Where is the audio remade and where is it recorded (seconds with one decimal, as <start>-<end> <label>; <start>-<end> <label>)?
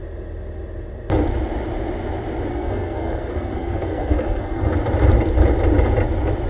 0.0-2.5 recorded; 2.5-4.7 remade; 4.7-6.5 recorded